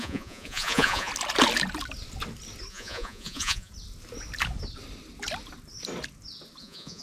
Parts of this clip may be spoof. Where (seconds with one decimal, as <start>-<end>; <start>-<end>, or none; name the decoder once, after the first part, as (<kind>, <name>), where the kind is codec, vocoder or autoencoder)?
0.0-1.1 (vocoder, Vocos); 2.7-3.7; 6.6-7.0